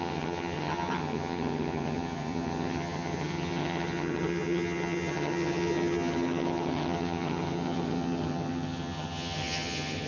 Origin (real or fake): fake